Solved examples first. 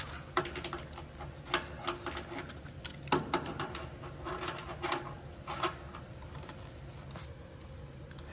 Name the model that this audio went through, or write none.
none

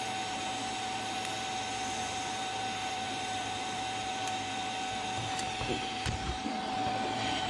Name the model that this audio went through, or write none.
vocoder, BigVGAN v2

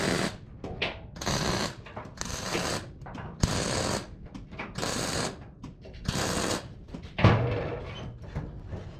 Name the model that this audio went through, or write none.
none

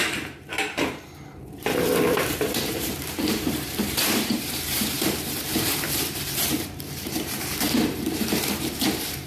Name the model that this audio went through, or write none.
vocoder, BigVGAN v2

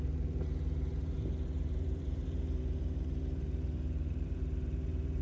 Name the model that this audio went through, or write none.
vocoder, BigVGAN v2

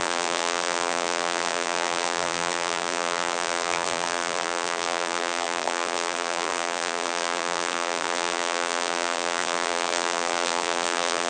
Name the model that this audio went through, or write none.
vocoder, BigVGAN v2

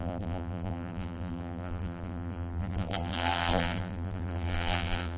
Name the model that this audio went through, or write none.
vocoder, BigVGAN v2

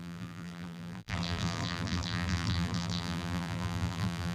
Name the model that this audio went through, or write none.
vocoder, BigVGAN v2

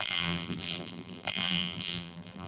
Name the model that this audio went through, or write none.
vocoder, BigVGAN v2